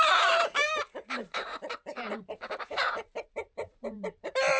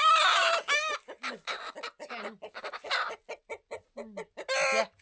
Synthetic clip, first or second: first